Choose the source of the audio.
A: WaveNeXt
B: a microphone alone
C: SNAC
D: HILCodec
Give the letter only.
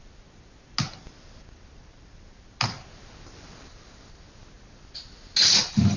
B